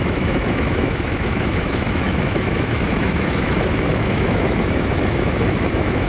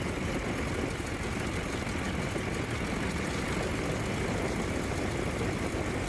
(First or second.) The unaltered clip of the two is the second